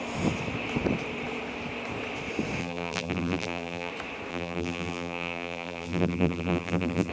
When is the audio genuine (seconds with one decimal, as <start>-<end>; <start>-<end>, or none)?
0.0-2.6; 3.9-4.3